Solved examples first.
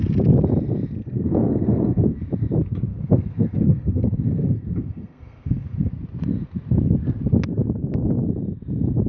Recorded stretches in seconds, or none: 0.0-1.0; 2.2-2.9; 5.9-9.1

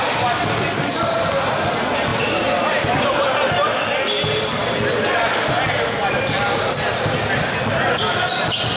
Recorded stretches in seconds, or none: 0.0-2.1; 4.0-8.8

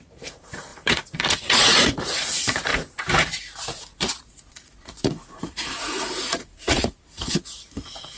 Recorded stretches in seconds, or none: 2.7-4.5